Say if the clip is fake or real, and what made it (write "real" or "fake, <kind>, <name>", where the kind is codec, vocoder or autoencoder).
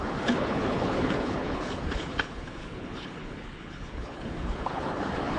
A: fake, codec, HILCodec